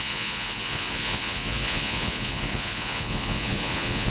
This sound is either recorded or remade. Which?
remade